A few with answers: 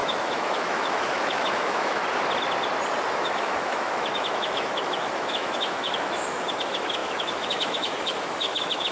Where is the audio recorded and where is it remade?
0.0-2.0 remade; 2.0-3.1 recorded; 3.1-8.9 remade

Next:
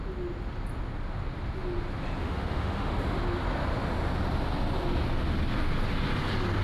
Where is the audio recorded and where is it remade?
0.0-2.2 recorded; 2.2-2.9 remade; 2.9-6.6 recorded

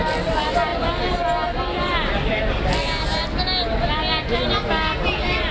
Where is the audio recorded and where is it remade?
0.0-5.5 recorded

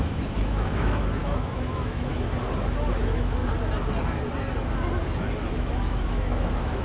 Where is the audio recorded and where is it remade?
0.0-2.1 remade; 2.1-3.0 recorded; 3.0-3.4 remade; 3.4-5.5 recorded; 5.5-6.8 remade

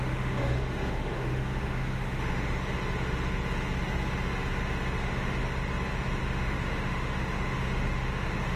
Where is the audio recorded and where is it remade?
0.0-2.8 remade; 2.8-5.0 recorded; 5.0-5.4 remade; 5.4-6.2 recorded; 6.2-8.6 remade

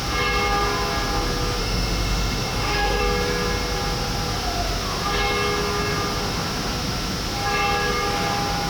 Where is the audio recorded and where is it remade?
0.0-1.6 recorded; 1.6-3.0 remade; 3.0-8.7 recorded

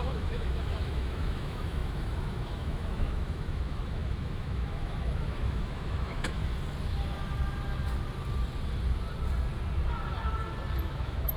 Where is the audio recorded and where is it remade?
0.0-6.4 remade; 6.4-10.8 recorded; 10.8-11.4 remade